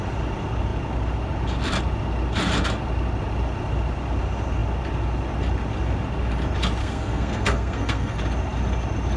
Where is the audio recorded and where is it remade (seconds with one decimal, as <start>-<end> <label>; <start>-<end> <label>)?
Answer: 0.0-6.8 recorded; 6.8-8.2 remade; 8.2-9.2 recorded